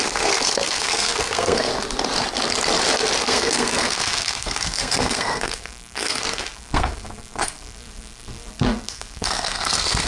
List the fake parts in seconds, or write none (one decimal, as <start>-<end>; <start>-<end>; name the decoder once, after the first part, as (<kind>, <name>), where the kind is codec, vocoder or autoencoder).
0.0-1.7 (codec, SNAC); 3.2-10.1